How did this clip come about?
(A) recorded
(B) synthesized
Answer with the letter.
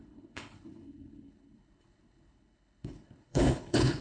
B